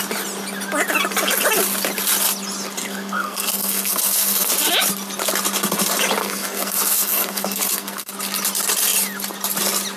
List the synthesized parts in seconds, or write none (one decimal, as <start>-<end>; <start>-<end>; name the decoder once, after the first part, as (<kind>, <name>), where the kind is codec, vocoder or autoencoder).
2.8-4.5 (codec, SNAC); 6.2-8.1